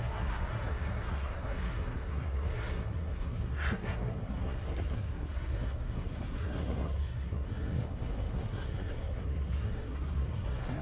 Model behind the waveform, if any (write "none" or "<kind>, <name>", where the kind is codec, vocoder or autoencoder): codec, SNAC